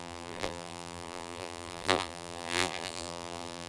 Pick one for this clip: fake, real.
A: fake